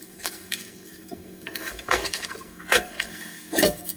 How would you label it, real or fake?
fake